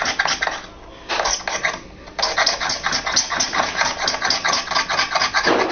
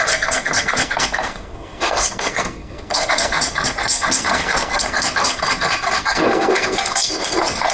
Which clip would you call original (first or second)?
first